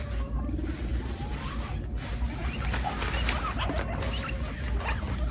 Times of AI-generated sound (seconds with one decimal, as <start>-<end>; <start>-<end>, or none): 0.9-1.6